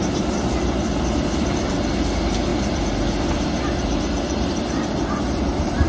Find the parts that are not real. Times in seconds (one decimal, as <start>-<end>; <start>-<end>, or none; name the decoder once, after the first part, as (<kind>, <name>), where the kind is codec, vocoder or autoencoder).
none